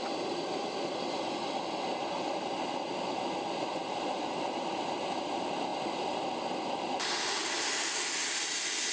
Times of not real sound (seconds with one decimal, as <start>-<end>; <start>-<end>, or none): none